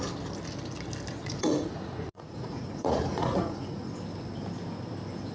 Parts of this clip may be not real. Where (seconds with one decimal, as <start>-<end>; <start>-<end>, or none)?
1.2-3.9